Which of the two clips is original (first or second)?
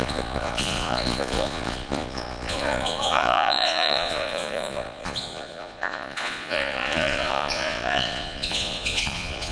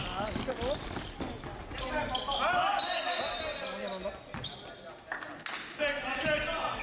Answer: second